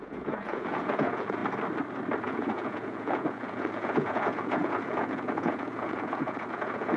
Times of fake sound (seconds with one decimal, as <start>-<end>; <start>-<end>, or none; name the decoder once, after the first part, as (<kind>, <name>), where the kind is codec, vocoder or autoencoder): 0.0-1.4 (vocoder, Vocos); 2.2-7.0